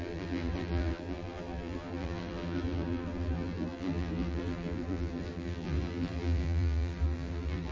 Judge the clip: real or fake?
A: fake